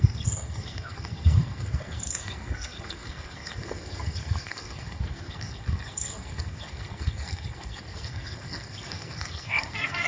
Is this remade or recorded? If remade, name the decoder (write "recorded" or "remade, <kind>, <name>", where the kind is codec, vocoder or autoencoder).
remade, codec, SNAC